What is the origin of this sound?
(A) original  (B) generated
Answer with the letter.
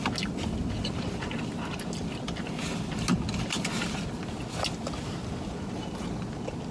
A